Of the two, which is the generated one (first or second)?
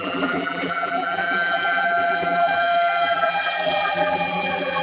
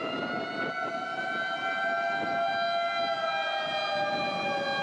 first